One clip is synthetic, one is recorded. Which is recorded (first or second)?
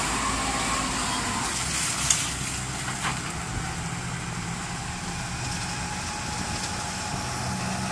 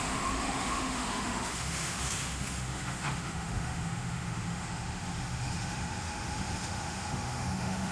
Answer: first